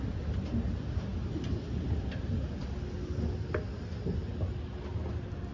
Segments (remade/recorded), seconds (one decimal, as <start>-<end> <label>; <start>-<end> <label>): 0.0-5.5 recorded